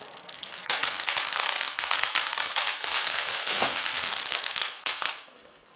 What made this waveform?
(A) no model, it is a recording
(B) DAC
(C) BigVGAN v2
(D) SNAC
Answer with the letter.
D